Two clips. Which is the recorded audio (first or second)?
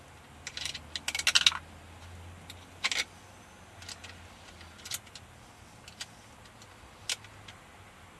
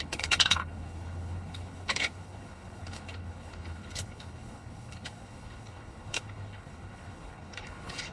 first